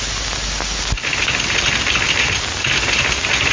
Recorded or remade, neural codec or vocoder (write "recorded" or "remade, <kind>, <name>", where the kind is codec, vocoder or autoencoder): recorded